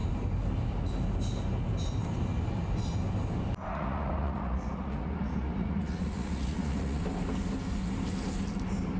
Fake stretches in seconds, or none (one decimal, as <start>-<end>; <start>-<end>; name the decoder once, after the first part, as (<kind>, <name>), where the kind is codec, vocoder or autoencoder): 3.7-7.0 (vocoder, Vocos)